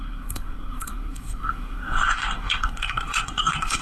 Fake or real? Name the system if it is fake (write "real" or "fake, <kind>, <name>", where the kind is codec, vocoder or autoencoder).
fake, codec, SNAC